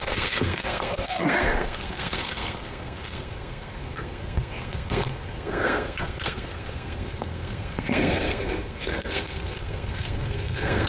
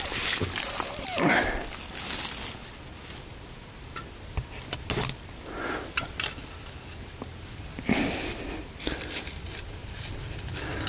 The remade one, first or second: first